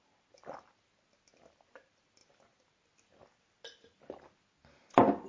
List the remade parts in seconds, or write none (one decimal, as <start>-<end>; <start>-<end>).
none